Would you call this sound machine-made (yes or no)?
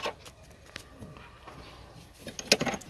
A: no